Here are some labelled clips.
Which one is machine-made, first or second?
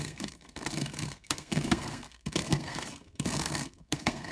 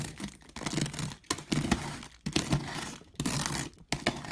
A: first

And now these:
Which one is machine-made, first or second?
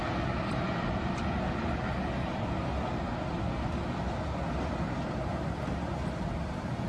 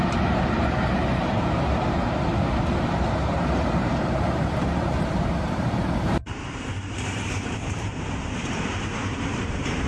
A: second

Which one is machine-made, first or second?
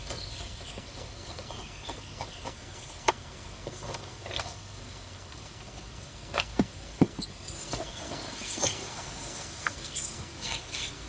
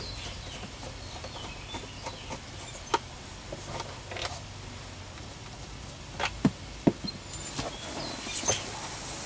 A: first